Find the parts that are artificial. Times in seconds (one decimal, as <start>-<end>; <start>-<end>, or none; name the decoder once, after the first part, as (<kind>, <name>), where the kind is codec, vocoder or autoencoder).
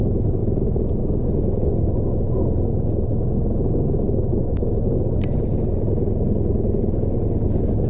0.4-1.7 (autoencoder, DAC-VAE)